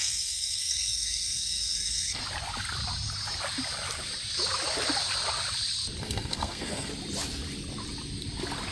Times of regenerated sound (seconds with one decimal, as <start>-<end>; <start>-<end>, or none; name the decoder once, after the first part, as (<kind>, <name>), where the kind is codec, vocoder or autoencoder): 0.0-2.2 (codec, SNAC); 6.0-6.9